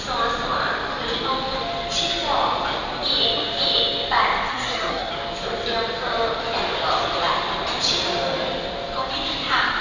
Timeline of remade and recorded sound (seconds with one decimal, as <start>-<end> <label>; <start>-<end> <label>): 0.0-4.5 recorded; 4.5-5.1 remade; 5.1-9.8 recorded